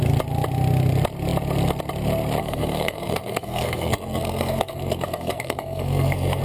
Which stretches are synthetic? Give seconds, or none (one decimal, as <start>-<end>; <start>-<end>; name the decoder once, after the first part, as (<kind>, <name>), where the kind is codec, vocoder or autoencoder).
2.4-6.4 (codec, SNAC)